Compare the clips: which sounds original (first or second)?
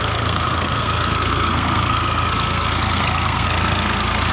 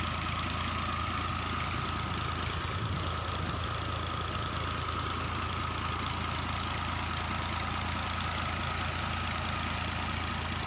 second